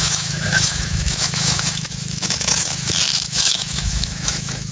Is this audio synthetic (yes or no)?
yes